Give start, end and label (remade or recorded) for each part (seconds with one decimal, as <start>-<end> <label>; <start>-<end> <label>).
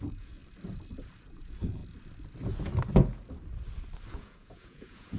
0.0-0.4 remade; 0.4-1.3 recorded; 1.3-1.8 remade; 1.8-4.1 recorded; 4.1-5.2 remade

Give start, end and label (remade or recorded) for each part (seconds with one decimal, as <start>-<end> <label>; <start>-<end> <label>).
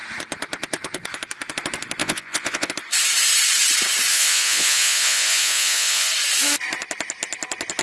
0.0-2.0 recorded; 2.0-2.7 remade; 2.7-4.1 recorded; 4.1-6.1 remade; 6.1-7.8 recorded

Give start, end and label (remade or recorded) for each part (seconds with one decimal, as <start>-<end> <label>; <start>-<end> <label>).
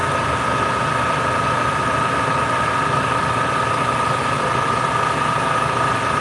0.0-6.2 recorded